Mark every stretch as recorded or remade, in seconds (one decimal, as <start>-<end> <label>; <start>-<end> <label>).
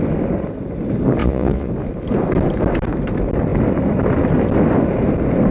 0.0-1.2 recorded; 1.2-1.7 remade; 1.7-5.5 recorded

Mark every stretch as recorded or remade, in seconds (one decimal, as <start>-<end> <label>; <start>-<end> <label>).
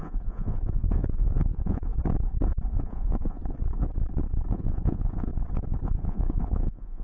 0.0-1.9 remade; 1.9-2.7 recorded; 2.7-3.4 remade; 3.4-4.5 recorded; 4.5-5.3 remade; 5.3-5.8 recorded; 5.8-7.0 remade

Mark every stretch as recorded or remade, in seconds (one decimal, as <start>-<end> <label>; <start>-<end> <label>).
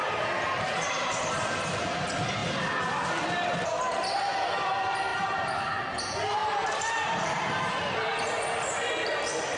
0.0-1.6 remade; 1.6-5.1 recorded; 5.1-6.0 remade; 6.0-6.4 recorded; 6.4-7.8 remade; 7.8-9.6 recorded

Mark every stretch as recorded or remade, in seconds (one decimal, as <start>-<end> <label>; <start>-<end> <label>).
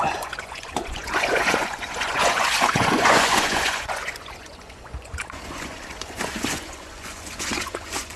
0.0-8.2 remade